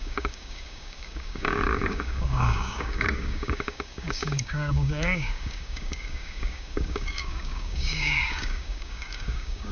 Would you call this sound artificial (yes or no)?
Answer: yes